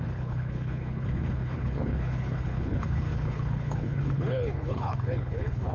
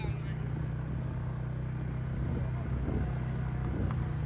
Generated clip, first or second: first